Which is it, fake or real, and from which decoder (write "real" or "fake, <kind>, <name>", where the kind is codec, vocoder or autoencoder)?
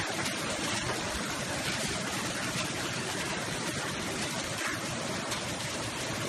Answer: fake, vocoder, BigVGAN v2